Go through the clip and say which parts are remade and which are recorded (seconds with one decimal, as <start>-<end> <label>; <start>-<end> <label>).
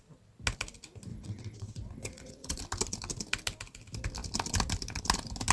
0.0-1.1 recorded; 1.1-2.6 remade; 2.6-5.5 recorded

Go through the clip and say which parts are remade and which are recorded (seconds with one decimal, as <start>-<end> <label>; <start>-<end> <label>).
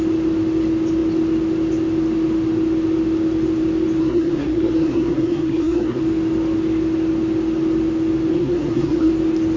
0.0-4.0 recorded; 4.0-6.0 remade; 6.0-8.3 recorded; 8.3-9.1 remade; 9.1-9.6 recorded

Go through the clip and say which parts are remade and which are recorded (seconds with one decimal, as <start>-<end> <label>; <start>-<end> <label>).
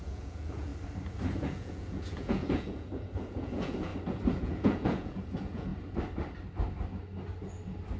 0.0-0.7 remade; 0.7-1.4 recorded; 1.4-3.9 remade; 3.9-4.4 recorded; 4.4-5.7 remade; 5.7-8.0 recorded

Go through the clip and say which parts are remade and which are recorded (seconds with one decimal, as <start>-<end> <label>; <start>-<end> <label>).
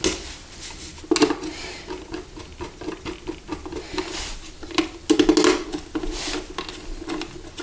0.0-7.6 recorded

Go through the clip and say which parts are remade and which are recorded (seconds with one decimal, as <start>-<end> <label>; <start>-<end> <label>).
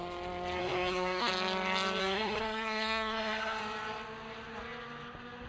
0.0-0.6 recorded; 0.6-1.3 remade; 1.3-2.0 recorded; 2.0-3.6 remade; 3.6-5.5 recorded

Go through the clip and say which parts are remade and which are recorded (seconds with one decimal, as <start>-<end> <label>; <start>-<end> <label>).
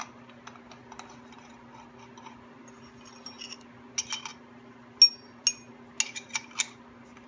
0.0-7.3 recorded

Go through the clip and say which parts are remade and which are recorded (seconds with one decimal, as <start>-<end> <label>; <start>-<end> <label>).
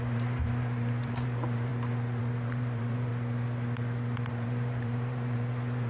0.0-1.7 remade; 1.7-2.2 recorded; 2.2-3.1 remade; 3.1-4.3 recorded; 4.3-5.9 remade